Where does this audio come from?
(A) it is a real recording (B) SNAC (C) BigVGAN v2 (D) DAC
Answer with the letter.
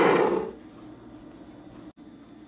A